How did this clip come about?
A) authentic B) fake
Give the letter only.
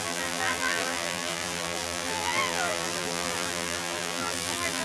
B